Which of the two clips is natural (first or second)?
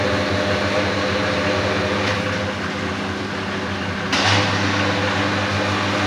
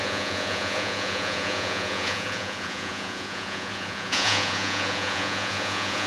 first